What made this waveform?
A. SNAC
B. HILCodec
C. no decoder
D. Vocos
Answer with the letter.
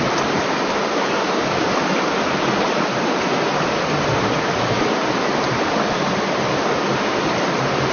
C